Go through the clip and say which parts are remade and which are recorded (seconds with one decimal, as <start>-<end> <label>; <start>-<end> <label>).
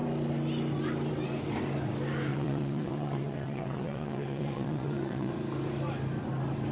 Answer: 0.0-2.3 recorded; 2.3-5.3 remade; 5.3-6.7 recorded